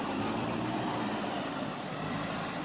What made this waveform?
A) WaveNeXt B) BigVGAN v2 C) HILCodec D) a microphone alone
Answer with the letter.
B